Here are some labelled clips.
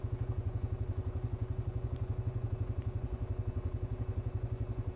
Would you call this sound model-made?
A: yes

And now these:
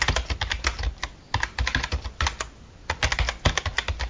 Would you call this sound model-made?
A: no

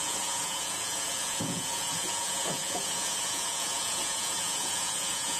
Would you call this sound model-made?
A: yes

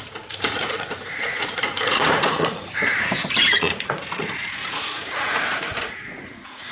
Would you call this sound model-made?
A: yes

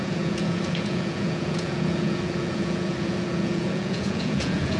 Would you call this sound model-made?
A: yes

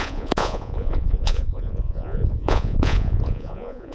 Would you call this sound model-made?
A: yes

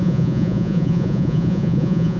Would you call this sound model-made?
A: yes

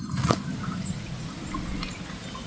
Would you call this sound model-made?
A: no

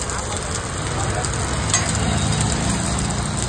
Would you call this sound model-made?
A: no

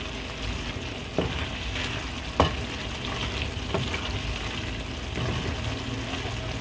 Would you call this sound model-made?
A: no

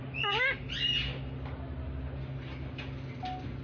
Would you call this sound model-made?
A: no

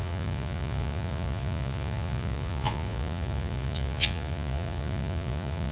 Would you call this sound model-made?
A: yes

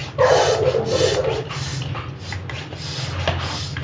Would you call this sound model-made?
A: no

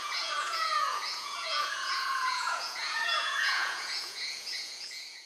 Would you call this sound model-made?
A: yes